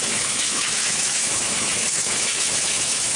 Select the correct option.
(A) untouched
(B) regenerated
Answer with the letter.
B